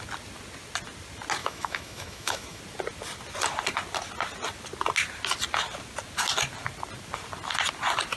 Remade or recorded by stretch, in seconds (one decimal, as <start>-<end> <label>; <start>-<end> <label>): 0.0-1.4 recorded; 1.4-2.6 remade; 2.6-8.2 recorded